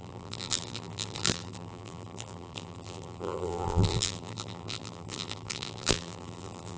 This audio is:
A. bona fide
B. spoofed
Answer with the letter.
B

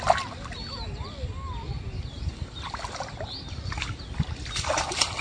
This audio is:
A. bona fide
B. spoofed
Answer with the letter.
A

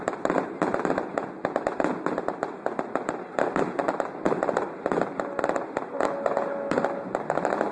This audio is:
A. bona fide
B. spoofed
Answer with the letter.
A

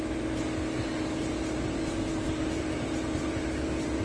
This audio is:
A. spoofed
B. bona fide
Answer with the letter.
A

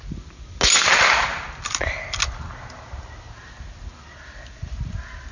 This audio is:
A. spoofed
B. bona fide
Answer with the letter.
B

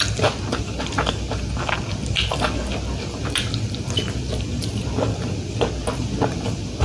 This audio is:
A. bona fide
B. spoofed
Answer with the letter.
B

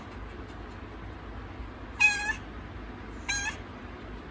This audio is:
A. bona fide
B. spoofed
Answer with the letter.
A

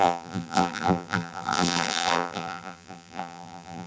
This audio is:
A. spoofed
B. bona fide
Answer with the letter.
A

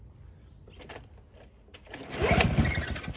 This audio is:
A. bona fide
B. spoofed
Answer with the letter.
A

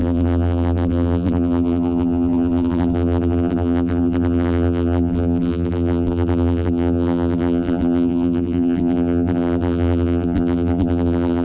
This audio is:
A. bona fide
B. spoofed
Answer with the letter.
B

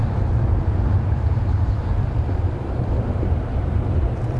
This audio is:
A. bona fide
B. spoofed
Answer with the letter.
B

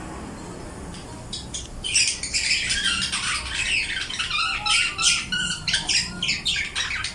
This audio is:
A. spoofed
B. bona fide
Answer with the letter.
A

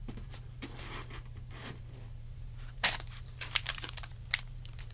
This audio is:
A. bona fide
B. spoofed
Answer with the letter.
B